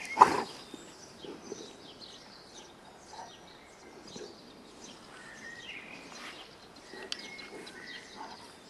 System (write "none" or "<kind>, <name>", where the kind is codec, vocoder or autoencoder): none